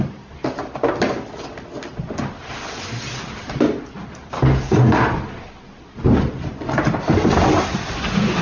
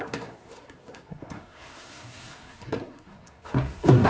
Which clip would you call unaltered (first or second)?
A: first